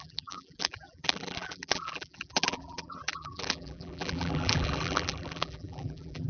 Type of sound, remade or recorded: remade